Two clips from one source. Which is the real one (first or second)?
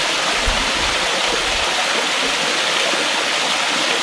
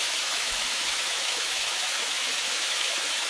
first